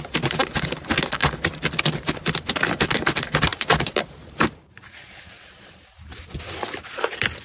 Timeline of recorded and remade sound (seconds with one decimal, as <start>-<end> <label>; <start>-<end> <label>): 0.0-3.5 recorded; 3.5-6.2 remade; 6.2-7.4 recorded